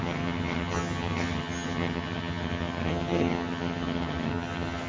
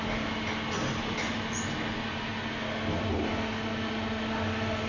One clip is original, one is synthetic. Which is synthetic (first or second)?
first